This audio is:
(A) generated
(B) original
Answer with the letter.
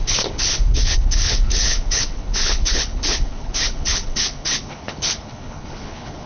A